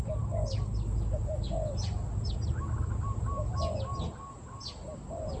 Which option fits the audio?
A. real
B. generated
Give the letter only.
A